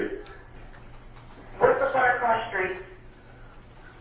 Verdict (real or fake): real